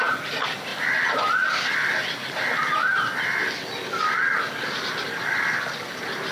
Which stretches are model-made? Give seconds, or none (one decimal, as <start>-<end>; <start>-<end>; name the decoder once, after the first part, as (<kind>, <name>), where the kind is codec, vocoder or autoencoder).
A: 0.7-1.2 (vocoder, BigVGAN v2)